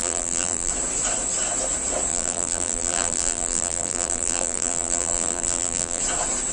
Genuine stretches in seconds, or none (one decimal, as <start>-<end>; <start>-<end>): 0.7-2.1; 6.0-6.5